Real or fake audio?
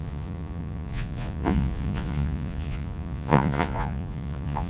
fake